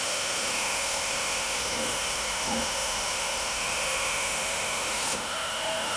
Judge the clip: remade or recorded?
remade